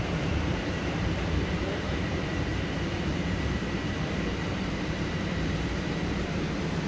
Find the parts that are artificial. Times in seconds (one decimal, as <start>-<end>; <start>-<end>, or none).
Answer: 0.0-2.5; 3.1-6.9